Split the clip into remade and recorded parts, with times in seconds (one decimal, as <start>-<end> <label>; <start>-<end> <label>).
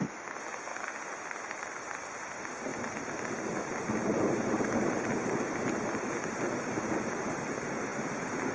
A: 0.0-0.7 recorded; 0.7-1.4 remade; 1.4-2.7 recorded; 2.7-6.7 remade; 6.7-8.5 recorded